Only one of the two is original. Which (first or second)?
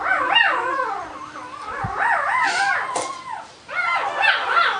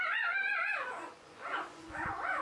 first